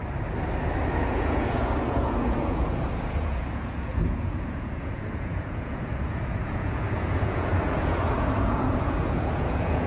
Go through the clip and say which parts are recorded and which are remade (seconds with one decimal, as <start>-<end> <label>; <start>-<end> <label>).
0.0-0.9 recorded; 0.9-9.9 remade

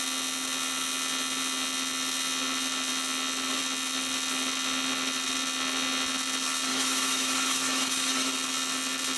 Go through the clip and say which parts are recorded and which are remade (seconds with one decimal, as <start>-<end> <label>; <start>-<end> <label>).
0.0-6.7 recorded; 6.7-8.3 remade; 8.3-9.2 recorded